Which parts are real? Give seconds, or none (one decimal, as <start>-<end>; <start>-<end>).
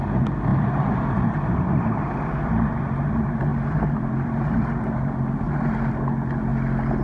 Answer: 0.0-0.5; 2.8-3.5; 5.9-7.0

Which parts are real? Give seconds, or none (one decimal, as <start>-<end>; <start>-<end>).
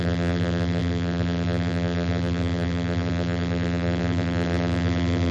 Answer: none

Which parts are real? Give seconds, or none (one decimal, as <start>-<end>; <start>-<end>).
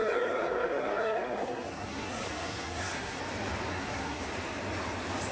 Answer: 3.2-3.7; 4.2-5.3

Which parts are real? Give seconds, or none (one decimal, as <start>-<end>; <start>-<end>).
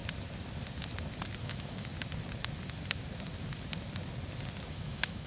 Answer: 0.0-1.4; 1.9-4.7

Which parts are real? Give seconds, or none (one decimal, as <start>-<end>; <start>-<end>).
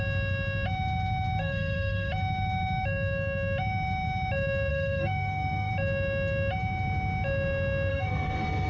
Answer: 0.0-1.4; 2.1-4.7; 5.7-7.9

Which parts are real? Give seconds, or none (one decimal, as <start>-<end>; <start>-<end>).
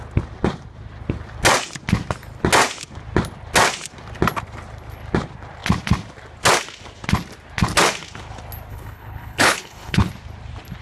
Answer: 0.0-8.7; 10.1-10.8